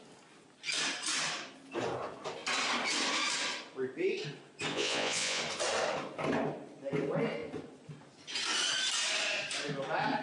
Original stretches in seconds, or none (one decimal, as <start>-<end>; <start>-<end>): 0.0-4.7; 5.4-10.2